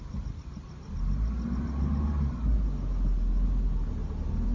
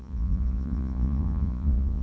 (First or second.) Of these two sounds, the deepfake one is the second